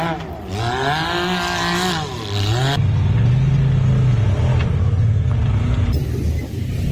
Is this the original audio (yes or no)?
yes